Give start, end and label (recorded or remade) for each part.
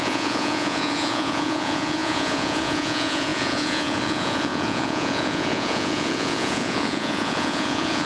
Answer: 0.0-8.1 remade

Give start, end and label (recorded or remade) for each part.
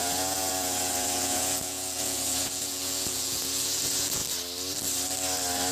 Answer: 0.0-4.2 remade; 4.2-5.7 recorded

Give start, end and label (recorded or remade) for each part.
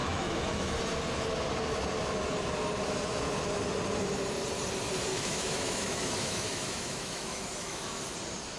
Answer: 0.0-0.8 remade; 0.8-5.1 recorded; 5.1-8.0 remade; 8.0-8.6 recorded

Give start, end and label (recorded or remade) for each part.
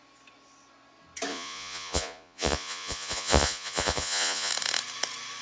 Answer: 0.0-1.3 recorded; 1.3-4.5 remade; 4.5-5.4 recorded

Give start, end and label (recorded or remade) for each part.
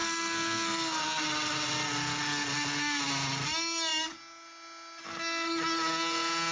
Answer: 0.0-1.0 remade; 1.0-6.5 recorded